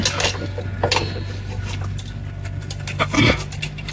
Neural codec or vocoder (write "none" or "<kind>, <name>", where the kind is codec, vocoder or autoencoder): none